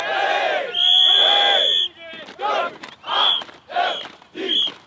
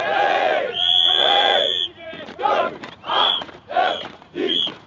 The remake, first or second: second